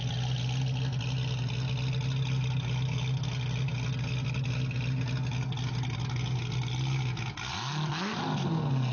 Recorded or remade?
recorded